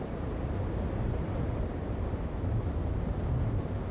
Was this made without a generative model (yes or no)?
yes